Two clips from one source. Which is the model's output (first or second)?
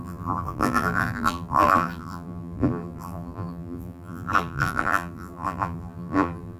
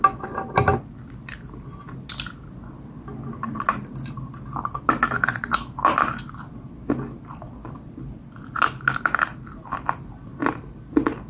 first